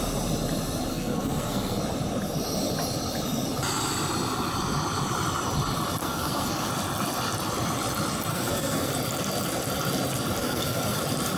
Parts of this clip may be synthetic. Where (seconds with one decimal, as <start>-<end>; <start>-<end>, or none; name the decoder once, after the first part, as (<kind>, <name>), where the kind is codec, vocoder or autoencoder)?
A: 0.9-1.8 (codec, SNAC); 6.0-6.7; 8.3-8.9; 10.4-11.0